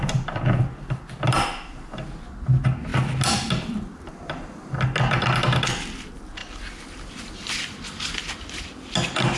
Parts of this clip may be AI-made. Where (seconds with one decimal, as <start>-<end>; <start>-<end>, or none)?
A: none